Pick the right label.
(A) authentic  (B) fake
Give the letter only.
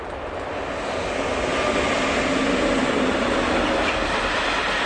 A